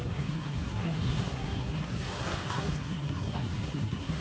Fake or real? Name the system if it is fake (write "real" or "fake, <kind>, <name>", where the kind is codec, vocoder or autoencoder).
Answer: fake, codec, SNAC